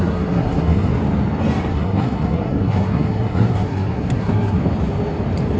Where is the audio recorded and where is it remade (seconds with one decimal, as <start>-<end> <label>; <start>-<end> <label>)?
0.0-0.9 remade; 0.9-1.7 recorded; 1.7-4.6 remade; 4.6-5.6 recorded